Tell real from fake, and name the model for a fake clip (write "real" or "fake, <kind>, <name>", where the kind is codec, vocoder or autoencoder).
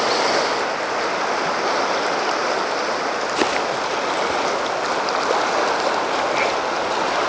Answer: real